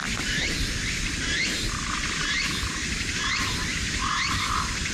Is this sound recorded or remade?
recorded